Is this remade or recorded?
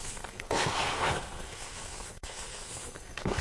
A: remade